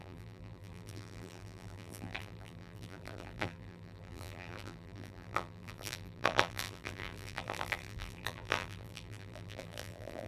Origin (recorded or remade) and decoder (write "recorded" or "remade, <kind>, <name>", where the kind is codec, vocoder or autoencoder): remade, vocoder, BigVGAN v2